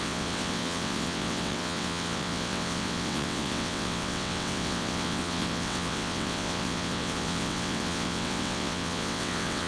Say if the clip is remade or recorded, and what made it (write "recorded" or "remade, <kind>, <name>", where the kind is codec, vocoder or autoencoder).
remade, vocoder, WaveNeXt